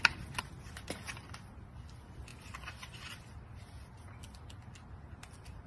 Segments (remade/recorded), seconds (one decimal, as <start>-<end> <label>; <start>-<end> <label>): 0.0-5.7 recorded